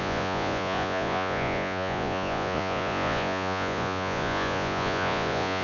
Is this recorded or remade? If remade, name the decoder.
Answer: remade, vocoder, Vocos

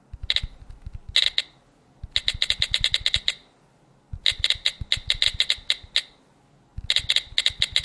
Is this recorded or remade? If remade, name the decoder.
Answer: recorded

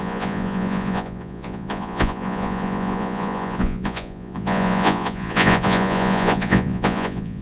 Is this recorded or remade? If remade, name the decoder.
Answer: remade, vocoder, Vocos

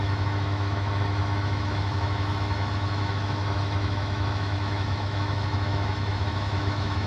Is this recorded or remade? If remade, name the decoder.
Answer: remade, autoencoder, DAC-VAE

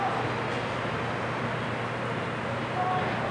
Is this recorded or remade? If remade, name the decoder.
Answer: recorded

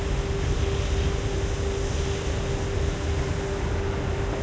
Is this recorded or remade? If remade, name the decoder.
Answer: recorded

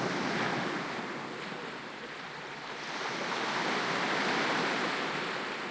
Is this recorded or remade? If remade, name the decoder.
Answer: recorded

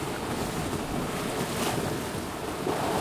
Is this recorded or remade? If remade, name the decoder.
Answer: recorded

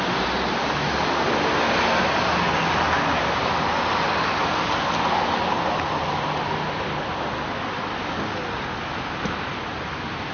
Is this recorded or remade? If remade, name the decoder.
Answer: recorded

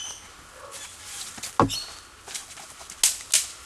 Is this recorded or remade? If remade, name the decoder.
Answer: recorded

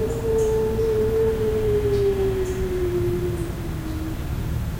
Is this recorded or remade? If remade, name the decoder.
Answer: recorded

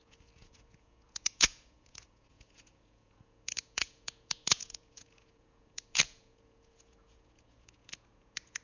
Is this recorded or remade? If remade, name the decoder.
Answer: remade, vocoder, Vocos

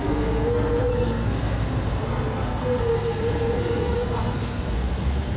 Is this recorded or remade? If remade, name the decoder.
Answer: remade, codec, SNAC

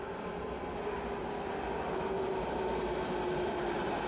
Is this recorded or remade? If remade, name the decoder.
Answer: recorded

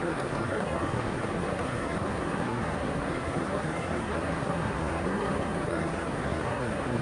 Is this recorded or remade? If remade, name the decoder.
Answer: remade, codec, SNAC